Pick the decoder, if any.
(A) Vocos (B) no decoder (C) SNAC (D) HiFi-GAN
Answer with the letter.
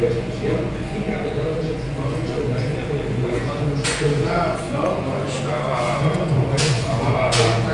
A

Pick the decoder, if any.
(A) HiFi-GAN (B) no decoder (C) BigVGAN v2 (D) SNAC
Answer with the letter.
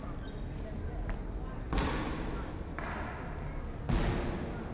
B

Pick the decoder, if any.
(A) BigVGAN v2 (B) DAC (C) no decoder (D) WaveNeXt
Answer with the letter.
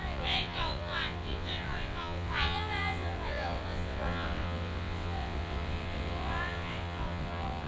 D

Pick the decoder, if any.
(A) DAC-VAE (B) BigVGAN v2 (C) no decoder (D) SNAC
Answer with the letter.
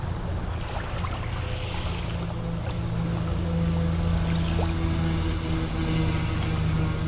C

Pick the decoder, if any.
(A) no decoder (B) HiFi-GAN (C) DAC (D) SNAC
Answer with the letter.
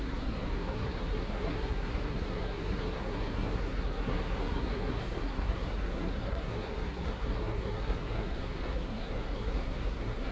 D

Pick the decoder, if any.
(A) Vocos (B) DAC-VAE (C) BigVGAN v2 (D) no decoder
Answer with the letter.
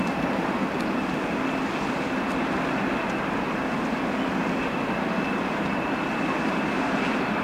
D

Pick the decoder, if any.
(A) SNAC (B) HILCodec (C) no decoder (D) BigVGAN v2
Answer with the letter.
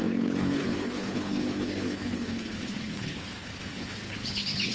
B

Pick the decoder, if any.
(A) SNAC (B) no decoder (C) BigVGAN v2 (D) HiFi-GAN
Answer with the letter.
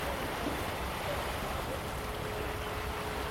B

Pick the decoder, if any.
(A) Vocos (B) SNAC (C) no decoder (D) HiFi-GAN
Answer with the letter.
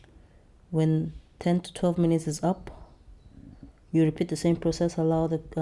C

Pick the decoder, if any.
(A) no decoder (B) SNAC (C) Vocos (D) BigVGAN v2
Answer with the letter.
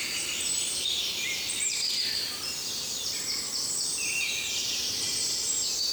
D